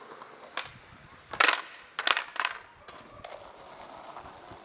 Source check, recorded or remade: recorded